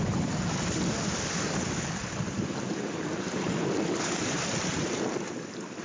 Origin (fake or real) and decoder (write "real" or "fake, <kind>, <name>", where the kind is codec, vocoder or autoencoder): real